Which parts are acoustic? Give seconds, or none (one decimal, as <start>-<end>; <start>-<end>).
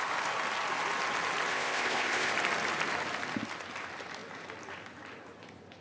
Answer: 0.0-1.5; 2.3-5.8